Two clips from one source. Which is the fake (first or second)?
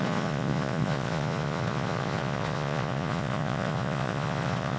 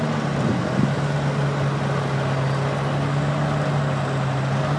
first